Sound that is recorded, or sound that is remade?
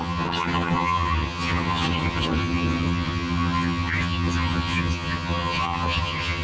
remade